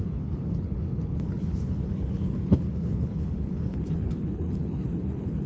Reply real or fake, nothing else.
fake